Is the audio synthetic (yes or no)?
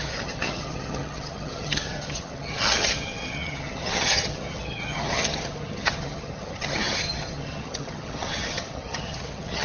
yes